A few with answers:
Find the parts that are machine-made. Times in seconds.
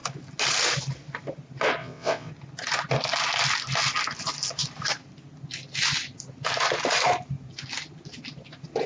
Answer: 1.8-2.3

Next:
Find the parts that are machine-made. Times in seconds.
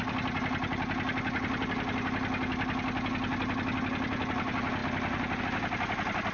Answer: none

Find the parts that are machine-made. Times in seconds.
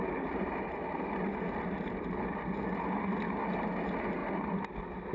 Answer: none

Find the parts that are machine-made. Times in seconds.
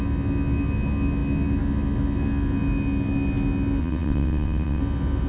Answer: 3.8-4.8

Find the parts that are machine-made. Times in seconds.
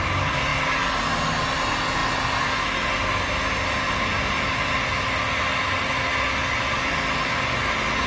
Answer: none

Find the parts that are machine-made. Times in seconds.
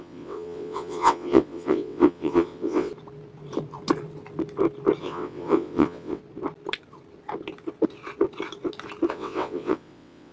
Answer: 0.0-2.9; 5.0-6.2; 9.1-10.3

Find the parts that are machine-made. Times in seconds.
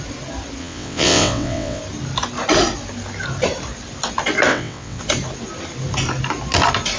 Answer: 0.6-1.8; 4.5-5.0